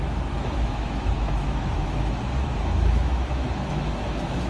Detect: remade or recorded remade